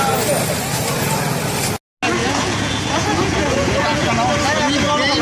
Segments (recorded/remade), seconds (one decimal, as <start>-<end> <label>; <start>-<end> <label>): 0.0-2.2 recorded; 2.2-4.1 remade; 4.1-5.2 recorded